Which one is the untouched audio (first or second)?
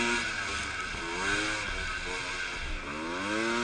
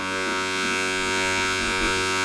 first